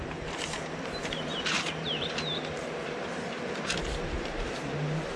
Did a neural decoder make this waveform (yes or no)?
yes